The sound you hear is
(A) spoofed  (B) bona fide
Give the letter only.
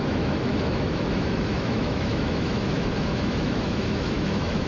A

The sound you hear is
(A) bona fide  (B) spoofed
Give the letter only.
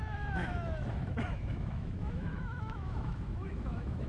B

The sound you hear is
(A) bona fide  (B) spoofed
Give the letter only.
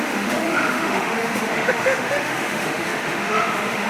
B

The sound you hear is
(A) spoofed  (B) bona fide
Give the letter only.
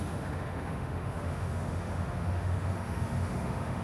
A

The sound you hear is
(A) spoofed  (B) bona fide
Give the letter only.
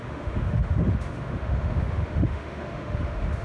A